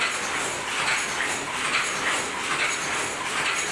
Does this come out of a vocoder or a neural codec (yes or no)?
no